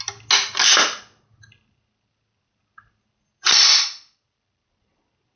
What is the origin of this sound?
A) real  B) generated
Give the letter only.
A